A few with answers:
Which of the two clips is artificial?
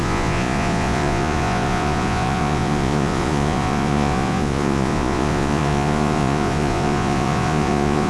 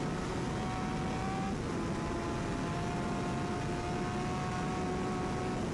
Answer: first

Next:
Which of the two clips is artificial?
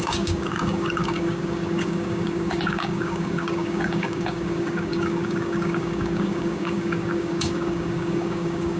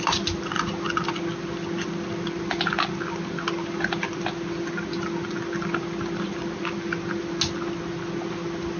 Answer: first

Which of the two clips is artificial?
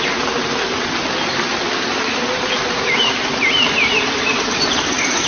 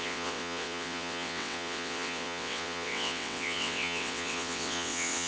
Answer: second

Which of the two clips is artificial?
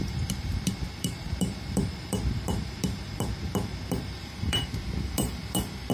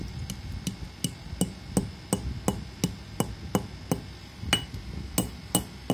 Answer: first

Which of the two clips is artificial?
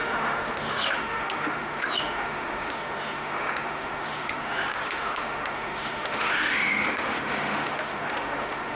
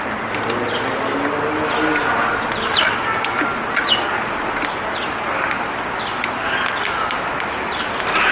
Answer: first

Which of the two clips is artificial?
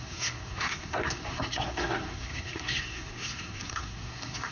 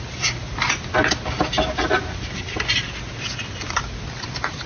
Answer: first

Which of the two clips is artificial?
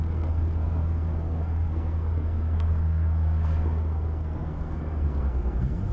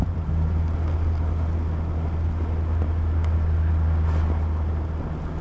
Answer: first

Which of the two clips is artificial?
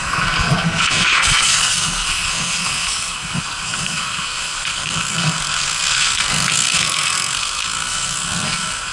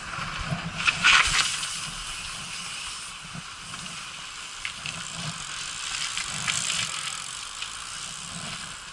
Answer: first